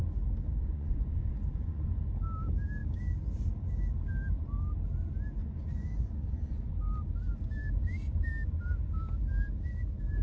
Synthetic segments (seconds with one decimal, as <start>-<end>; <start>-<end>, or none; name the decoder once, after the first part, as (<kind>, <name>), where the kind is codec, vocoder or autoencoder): 0.6-2.0 (vocoder, Vocos); 5.4-6.7

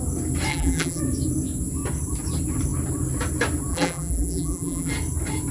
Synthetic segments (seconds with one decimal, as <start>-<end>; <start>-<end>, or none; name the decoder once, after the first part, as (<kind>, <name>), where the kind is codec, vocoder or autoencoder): 0.5-1.0 (vocoder, BigVGAN v2); 3.7-4.9